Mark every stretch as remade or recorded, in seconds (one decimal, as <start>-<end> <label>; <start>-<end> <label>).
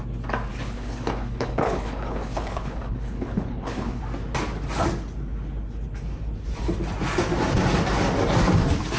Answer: 0.0-0.5 recorded; 0.5-4.0 remade; 4.0-9.0 recorded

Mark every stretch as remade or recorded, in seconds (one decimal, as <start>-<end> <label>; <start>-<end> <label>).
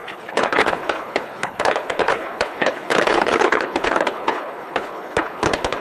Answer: 0.0-5.8 remade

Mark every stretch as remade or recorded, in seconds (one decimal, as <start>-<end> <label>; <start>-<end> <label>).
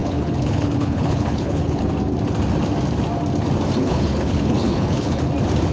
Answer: 0.0-1.9 remade; 1.9-3.8 recorded; 3.8-5.3 remade; 5.3-5.7 recorded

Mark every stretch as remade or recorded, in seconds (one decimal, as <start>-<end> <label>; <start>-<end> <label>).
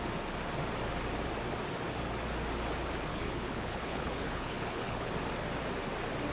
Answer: 0.0-3.1 recorded; 3.1-5.1 remade; 5.1-6.3 recorded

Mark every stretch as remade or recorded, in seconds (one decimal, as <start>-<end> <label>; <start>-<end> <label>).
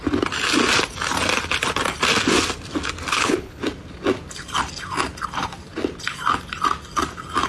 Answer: 0.0-3.1 recorded; 3.1-3.6 remade; 3.6-7.5 recorded